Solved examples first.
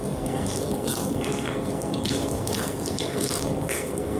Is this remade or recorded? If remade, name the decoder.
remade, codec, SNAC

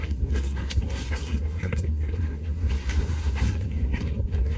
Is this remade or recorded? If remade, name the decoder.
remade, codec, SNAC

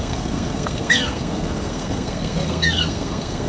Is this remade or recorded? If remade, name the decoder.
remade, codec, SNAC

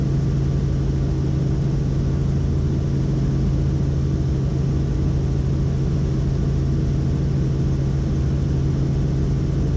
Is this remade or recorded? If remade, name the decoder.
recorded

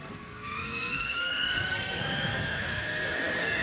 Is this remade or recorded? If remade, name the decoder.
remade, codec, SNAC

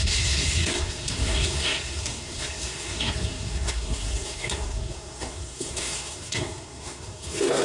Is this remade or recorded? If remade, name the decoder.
remade, codec, SNAC